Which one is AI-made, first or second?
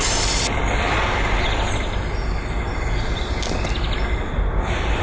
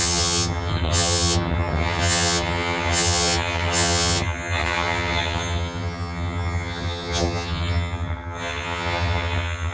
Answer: second